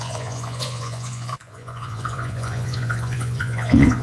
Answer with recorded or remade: remade